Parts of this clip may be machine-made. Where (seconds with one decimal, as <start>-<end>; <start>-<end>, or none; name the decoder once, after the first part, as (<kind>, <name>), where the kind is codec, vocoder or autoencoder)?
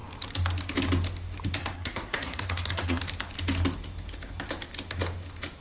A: 1.6-3.0 (codec, SNAC)